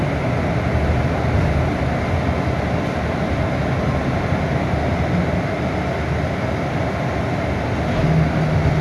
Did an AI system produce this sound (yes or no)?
no